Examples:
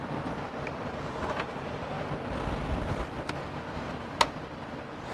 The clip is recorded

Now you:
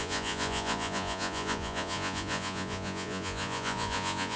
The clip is remade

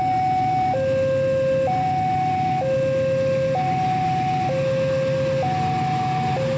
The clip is recorded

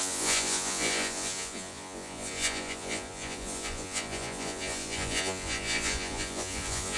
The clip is remade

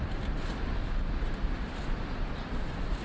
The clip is recorded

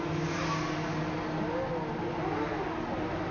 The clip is recorded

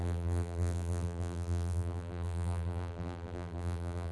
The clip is remade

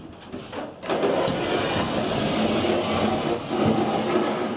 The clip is recorded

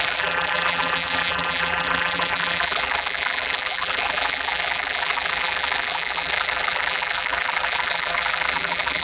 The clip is remade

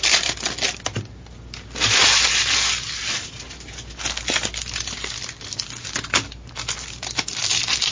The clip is recorded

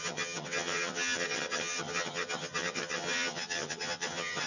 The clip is remade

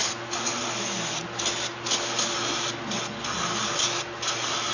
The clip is recorded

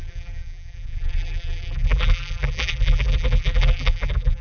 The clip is remade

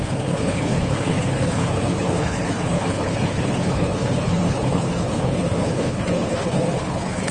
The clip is remade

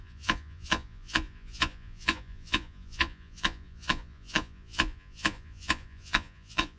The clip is remade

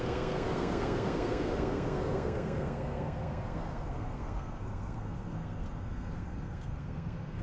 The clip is remade